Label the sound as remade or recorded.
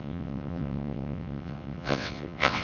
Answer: remade